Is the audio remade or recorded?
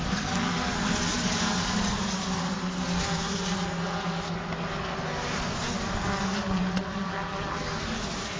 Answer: recorded